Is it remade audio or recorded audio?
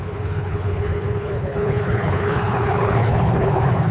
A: remade